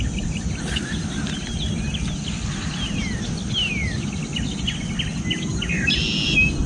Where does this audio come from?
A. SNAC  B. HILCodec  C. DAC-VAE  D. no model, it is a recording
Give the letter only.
D